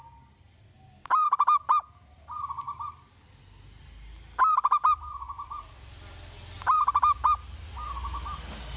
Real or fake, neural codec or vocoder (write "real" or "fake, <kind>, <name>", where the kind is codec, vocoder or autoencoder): real